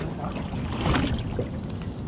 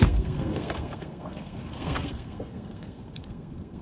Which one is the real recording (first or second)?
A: first